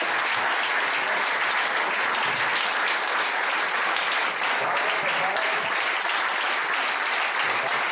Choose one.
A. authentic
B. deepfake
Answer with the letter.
A